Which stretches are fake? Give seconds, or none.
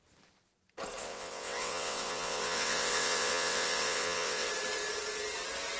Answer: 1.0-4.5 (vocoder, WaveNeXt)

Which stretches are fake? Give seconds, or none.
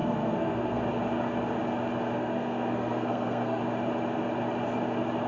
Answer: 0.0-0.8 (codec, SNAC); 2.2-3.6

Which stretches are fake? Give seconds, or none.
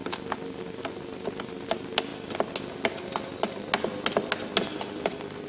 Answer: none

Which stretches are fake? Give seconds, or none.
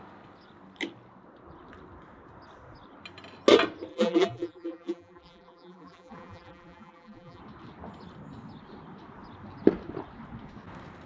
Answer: 3.9-7.4 (vocoder, BigVGAN v2)